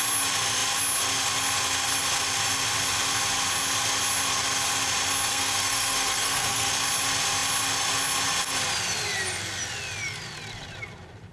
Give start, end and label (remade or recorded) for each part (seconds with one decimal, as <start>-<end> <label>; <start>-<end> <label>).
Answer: 0.0-5.3 recorded; 5.3-6.7 remade; 6.7-11.3 recorded